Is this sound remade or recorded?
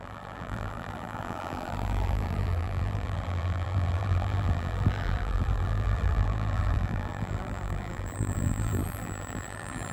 remade